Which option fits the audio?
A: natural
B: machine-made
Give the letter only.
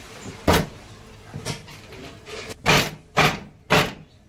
A